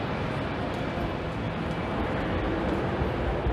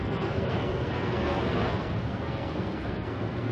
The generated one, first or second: second